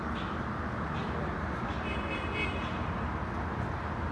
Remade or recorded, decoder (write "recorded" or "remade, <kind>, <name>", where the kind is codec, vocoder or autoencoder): recorded